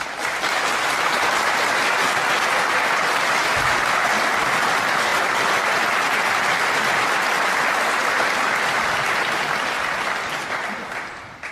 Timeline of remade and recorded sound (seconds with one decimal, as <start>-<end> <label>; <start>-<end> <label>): 0.0-11.5 recorded